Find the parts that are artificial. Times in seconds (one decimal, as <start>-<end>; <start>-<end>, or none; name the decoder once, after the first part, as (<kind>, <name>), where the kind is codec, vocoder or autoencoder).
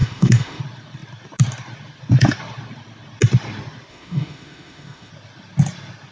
0.0-0.6 (autoencoder, DAC-VAE); 3.9-5.1